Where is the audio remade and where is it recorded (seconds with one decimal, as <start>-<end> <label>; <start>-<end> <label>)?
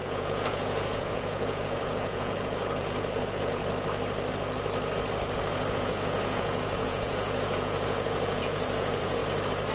0.0-3.6 remade; 3.6-5.7 recorded; 5.7-9.2 remade; 9.2-9.7 recorded